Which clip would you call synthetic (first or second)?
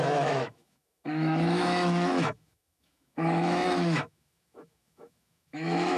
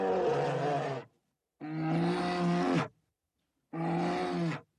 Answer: first